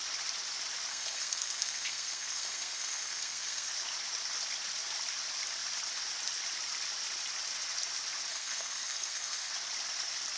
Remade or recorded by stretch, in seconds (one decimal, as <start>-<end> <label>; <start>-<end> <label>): 0.0-0.9 recorded; 0.9-3.7 remade; 3.7-8.3 recorded; 8.3-9.5 remade; 9.5-10.4 recorded